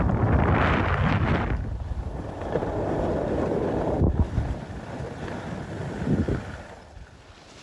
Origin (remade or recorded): remade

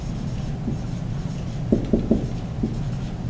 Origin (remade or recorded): recorded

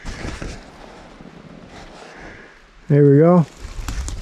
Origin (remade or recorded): recorded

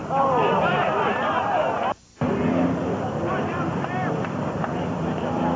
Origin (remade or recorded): remade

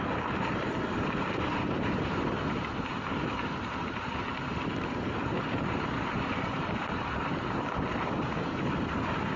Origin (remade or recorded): remade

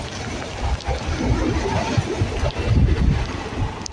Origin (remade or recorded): recorded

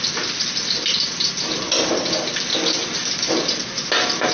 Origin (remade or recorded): recorded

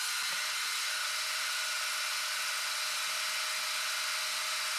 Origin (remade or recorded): recorded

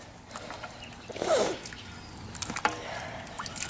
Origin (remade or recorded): recorded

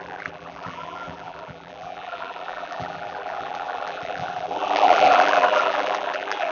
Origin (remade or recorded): remade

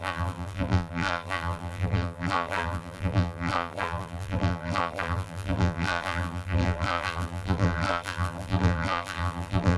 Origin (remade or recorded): remade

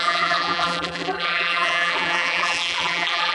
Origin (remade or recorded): remade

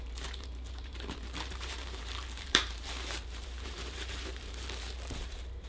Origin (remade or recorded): remade